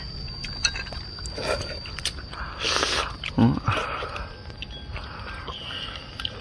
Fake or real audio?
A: real